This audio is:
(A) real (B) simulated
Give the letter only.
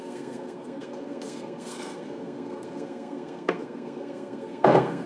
B